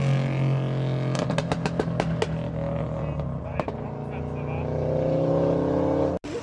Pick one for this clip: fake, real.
real